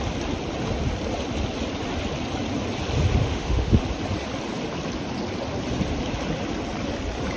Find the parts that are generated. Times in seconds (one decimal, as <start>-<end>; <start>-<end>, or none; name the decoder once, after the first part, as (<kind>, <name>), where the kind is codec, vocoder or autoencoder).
3.2-3.8 (autoencoder, DAC-VAE)